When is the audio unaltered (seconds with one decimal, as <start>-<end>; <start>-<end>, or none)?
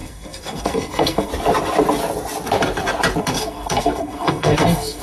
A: 1.3-3.2